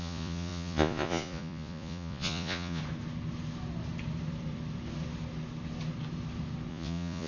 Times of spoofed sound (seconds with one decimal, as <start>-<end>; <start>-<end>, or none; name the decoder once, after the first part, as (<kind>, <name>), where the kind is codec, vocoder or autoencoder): 0.0-2.8 (vocoder, Vocos); 6.7-7.3